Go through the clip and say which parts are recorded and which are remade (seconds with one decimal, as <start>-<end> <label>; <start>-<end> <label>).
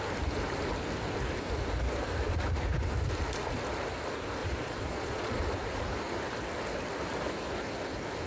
0.0-4.4 recorded; 4.4-5.4 remade; 5.4-8.3 recorded